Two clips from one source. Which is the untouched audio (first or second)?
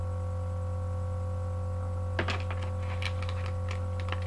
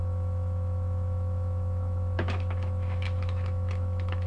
first